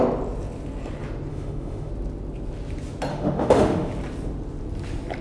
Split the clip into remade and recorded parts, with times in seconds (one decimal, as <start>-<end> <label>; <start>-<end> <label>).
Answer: 0.0-1.3 recorded; 1.3-1.9 remade; 1.9-3.1 recorded; 3.1-3.9 remade; 3.9-5.2 recorded